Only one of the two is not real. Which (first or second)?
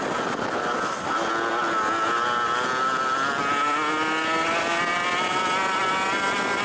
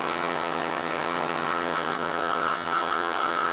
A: second